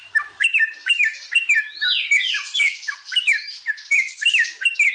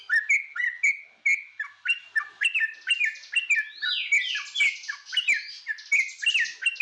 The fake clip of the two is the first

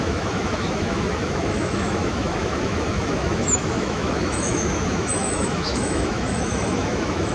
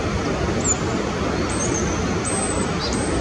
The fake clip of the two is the first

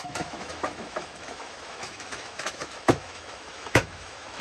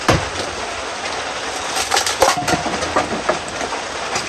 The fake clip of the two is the first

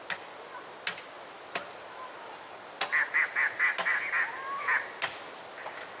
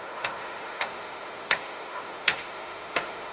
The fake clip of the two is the second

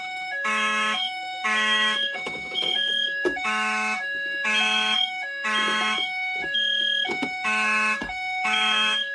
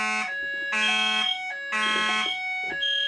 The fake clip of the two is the first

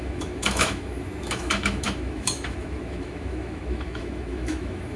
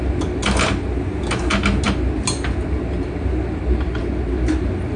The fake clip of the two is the first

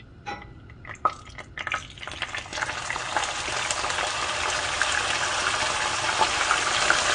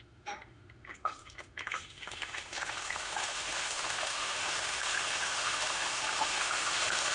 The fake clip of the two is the second